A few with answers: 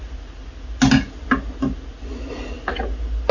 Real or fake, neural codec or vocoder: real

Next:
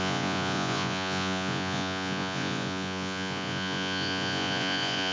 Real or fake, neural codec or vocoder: fake, vocoder, Vocos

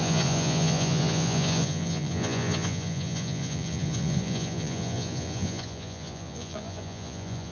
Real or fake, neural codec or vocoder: fake, vocoder, Vocos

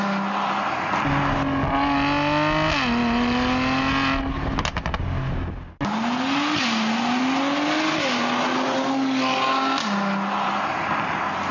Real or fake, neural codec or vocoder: real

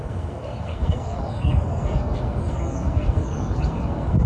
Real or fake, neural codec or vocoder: fake, codec, SNAC